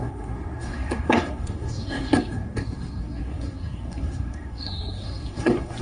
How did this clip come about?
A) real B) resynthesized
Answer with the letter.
B